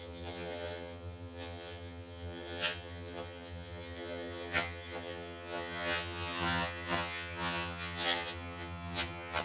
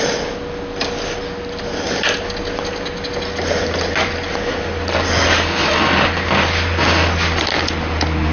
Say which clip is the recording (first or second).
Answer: second